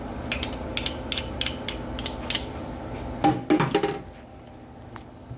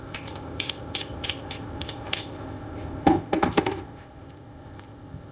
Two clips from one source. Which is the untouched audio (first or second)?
first